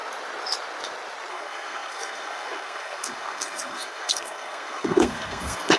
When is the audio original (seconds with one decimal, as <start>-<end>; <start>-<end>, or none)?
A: 0.0-1.3